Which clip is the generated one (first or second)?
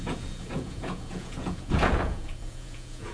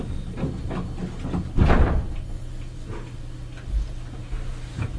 first